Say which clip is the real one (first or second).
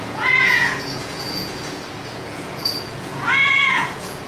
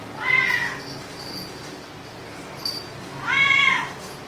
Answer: second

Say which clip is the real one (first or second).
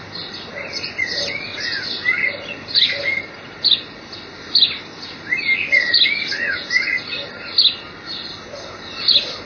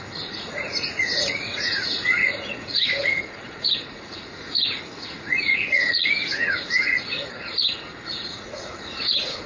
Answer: first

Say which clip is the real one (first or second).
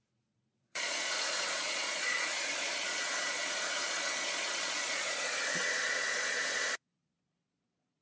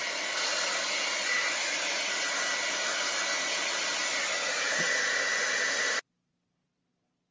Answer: second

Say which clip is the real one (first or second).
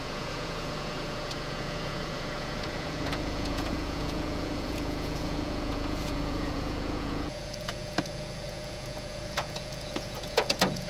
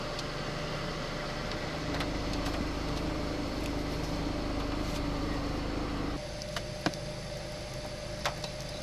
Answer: second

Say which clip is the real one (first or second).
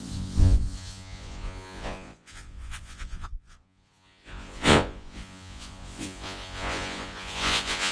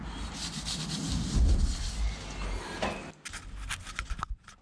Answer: second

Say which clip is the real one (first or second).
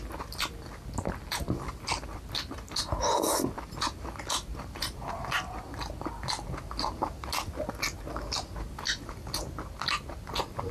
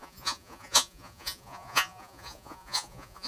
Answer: first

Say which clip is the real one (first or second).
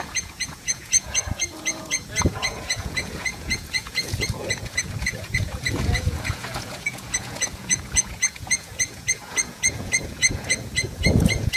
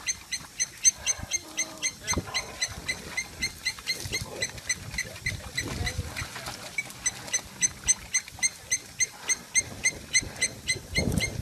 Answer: second